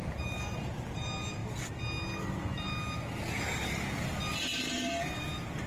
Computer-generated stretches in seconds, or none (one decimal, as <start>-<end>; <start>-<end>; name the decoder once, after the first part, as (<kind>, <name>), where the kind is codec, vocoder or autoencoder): none

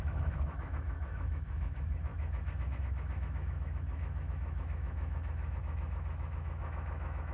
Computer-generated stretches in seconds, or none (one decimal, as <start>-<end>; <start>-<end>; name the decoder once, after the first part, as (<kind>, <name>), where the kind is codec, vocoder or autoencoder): 0.0-7.3 (autoencoder, DAC-VAE)

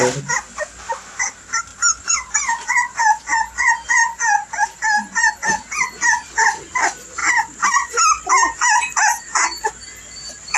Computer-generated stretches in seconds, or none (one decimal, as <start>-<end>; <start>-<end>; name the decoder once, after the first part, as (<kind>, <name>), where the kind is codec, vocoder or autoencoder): none

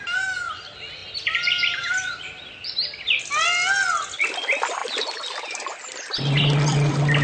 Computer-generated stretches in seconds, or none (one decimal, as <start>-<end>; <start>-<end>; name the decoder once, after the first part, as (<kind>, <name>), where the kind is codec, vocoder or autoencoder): none

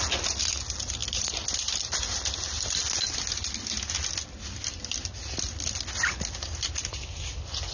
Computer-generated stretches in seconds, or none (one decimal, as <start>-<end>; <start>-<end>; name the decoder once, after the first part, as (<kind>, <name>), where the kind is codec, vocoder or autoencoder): none

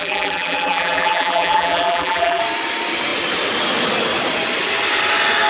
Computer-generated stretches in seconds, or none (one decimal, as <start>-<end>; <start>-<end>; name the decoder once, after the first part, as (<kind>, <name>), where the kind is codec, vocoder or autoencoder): 0.0-2.4 (vocoder, BigVGAN v2)

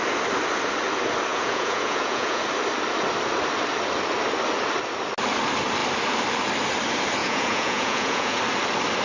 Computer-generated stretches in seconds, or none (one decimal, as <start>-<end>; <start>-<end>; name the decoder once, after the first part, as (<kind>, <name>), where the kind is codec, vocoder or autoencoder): 1.3-2.4 (vocoder, Vocos); 7.2-8.4